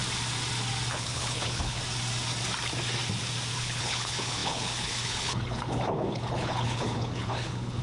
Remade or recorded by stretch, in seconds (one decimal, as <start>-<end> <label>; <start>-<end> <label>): 0.0-0.9 recorded; 0.9-1.8 remade; 1.8-3.6 recorded; 3.6-7.8 remade